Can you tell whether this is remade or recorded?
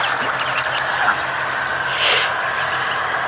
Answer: recorded